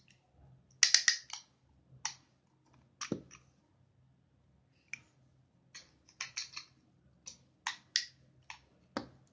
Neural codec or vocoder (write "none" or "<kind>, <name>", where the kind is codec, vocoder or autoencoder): none